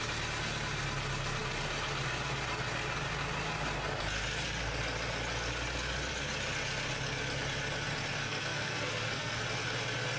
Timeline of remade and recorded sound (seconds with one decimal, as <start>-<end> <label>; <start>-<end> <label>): 0.0-8.2 recorded; 8.2-9.4 remade; 9.4-10.2 recorded